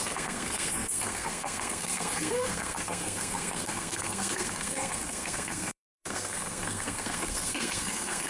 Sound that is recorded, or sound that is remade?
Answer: remade